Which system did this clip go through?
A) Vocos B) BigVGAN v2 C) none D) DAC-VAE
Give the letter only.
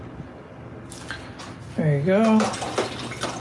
C